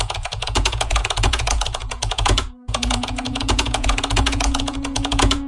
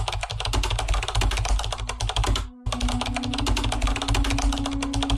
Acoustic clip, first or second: second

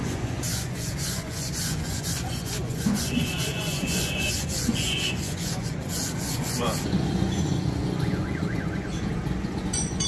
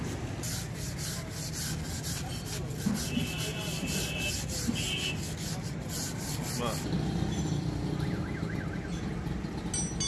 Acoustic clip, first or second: second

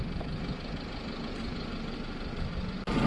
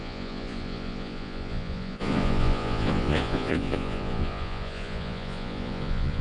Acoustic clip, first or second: first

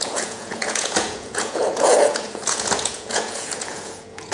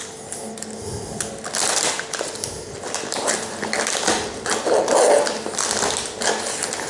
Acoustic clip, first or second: second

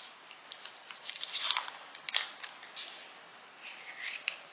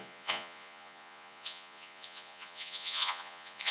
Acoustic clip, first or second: first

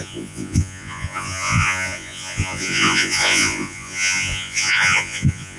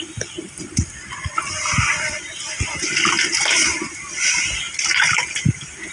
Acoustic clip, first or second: second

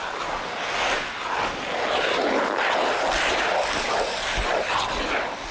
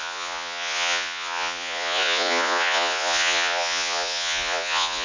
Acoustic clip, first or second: first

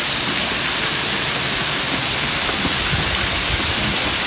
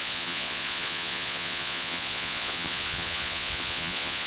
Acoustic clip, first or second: first